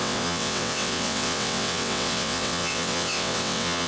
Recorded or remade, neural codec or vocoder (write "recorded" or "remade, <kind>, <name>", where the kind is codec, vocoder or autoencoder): remade, vocoder, WaveNeXt